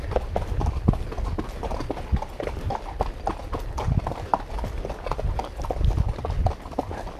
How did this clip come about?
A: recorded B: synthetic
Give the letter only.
A